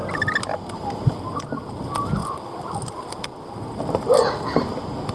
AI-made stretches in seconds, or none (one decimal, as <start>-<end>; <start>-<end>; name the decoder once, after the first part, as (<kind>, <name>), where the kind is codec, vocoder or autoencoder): none

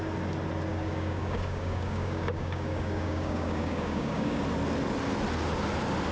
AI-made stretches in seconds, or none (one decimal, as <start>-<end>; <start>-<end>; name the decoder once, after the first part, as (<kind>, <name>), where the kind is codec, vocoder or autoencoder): 0.7-4.4 (codec, DAC)